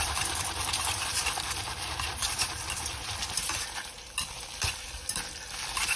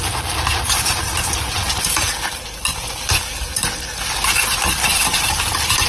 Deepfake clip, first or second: first